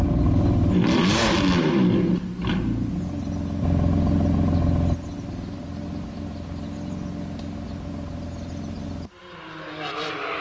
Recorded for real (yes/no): yes